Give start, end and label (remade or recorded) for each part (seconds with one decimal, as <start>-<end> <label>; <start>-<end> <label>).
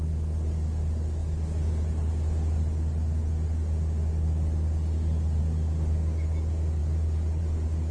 0.0-7.9 recorded